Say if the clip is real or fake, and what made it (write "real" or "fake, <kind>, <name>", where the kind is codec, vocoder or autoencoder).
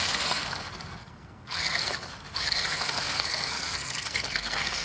fake, codec, SNAC